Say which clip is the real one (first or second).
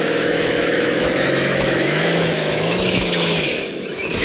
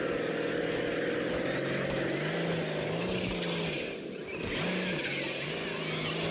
second